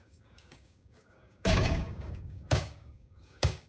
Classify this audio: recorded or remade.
remade